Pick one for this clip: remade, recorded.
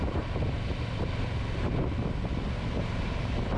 recorded